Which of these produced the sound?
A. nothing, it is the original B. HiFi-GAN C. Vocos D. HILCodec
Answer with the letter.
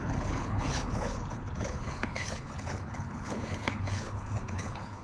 D